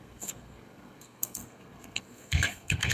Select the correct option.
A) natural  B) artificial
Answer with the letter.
B